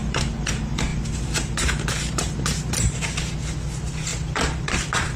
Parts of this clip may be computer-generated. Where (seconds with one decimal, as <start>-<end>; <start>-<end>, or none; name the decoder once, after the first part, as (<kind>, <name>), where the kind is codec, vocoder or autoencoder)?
0.0-5.2 (vocoder, BigVGAN v2)